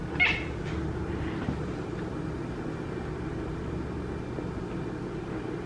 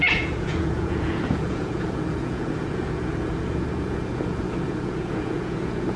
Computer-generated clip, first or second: second